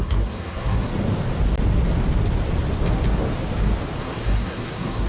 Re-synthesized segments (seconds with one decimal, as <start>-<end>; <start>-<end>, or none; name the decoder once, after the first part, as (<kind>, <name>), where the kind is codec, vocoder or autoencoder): 0.0-0.9 (codec, SNAC); 4.0-5.1